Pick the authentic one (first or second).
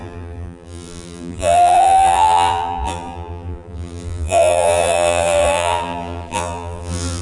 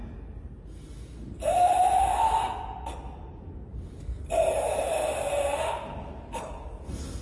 second